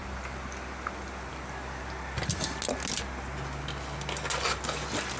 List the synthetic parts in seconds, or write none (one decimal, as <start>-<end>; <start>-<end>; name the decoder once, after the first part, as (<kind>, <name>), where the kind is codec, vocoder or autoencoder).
none

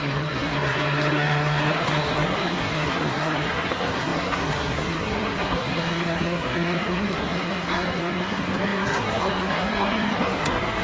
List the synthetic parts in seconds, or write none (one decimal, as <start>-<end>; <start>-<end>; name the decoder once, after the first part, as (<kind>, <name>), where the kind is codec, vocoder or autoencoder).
0.0-10.8 (codec, SNAC)

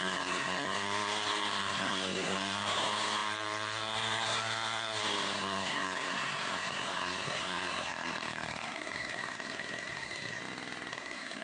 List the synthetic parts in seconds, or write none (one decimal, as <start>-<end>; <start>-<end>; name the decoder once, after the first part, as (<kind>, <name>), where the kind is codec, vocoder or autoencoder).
0.0-10.4 (codec, SNAC); 10.9-11.4

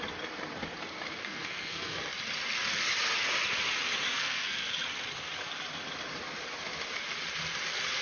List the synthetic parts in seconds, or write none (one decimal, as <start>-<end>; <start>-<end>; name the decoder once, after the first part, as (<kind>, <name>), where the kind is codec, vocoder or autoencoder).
1.2-2.0 (codec, SNAC); 4.1-4.7